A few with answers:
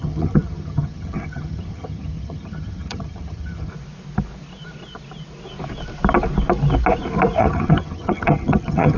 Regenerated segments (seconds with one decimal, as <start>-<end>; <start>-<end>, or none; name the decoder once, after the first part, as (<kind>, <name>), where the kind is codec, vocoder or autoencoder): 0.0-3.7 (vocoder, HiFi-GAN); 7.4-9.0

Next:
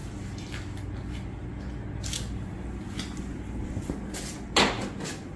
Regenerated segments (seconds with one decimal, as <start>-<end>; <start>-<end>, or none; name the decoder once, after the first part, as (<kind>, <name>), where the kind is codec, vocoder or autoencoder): none

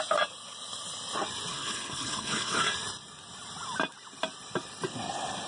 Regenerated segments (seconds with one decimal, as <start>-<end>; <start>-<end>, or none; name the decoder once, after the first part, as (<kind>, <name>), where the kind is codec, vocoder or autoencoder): 1.5-2.6 (codec, HILCodec)

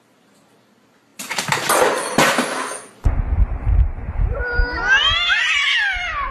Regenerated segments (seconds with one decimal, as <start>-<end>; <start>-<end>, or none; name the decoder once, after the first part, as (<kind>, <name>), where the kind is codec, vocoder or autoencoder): none

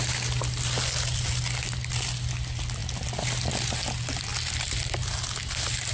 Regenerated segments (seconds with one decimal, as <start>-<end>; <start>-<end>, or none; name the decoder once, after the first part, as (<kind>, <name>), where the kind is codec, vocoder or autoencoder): none

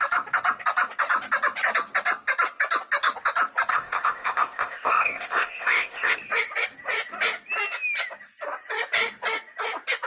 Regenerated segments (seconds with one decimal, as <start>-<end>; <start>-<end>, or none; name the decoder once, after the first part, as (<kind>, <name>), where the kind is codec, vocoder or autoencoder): 3.7-6.2 (codec, ZipCodec)

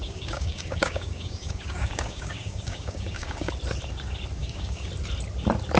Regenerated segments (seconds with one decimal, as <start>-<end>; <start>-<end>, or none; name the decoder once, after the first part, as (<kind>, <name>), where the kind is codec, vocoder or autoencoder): 0.0-3.5 (codec, DAC); 4.4-4.9